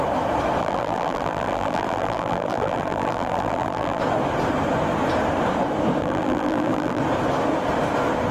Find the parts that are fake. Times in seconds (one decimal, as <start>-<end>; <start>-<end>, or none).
0.6-4.0; 6.0-7.0